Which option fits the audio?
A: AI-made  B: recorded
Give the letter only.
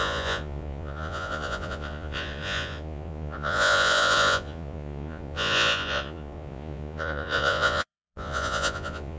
A